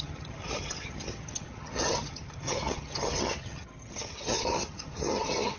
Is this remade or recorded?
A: remade